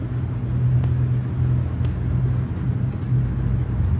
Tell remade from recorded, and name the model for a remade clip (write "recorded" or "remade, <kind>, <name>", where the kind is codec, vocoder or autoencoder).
recorded